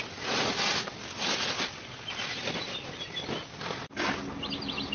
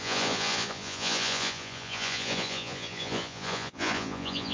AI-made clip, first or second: second